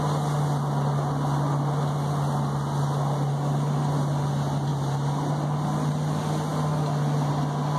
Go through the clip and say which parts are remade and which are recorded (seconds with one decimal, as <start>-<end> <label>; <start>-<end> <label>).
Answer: 0.0-7.8 recorded